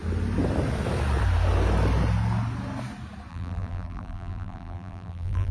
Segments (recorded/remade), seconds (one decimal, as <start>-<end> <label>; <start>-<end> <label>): 0.0-3.3 recorded; 3.3-5.5 remade